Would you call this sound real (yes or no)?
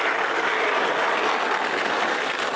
yes